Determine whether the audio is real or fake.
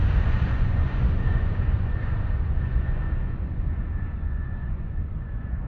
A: fake